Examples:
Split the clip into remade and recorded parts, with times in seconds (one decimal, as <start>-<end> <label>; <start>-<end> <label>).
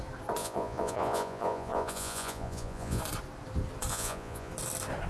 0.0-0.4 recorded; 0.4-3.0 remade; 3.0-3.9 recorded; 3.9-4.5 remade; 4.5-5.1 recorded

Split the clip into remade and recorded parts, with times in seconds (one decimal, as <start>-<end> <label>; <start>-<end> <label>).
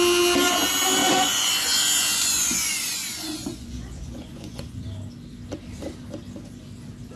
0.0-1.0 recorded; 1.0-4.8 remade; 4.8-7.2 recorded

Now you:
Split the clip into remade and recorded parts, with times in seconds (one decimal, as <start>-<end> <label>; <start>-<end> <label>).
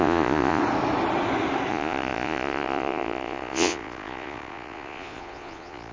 0.0-0.6 remade; 0.6-1.7 recorded; 1.7-5.9 remade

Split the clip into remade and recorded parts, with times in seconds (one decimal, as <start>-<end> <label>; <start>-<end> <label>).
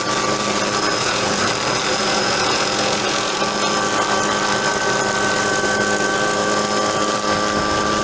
0.0-1.0 recorded; 1.0-1.5 remade; 1.5-2.0 recorded; 2.0-3.4 remade; 3.4-8.0 recorded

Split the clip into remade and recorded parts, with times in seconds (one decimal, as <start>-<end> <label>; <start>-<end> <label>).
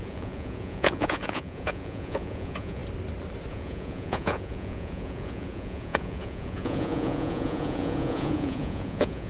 0.0-2.8 remade; 2.8-3.5 recorded; 3.5-9.3 remade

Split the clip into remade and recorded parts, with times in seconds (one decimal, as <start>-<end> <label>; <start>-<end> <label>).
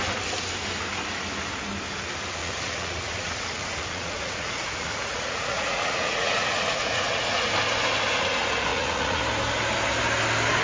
0.0-2.4 recorded; 2.4-7.5 remade; 7.5-8.7 recorded; 8.7-9.2 remade; 9.2-10.6 recorded